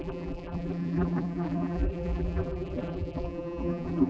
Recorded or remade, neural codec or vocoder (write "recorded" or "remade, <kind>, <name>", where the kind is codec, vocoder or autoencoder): remade, vocoder, BigVGAN v2